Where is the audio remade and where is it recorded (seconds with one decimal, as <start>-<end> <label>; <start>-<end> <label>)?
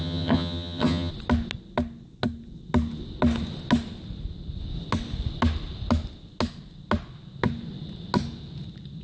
0.0-1.1 remade; 1.1-9.0 recorded